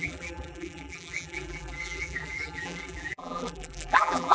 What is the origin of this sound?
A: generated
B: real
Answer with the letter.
A